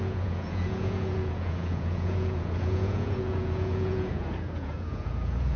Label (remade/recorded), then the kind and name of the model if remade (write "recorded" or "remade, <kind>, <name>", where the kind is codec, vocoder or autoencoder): remade, vocoder, Vocos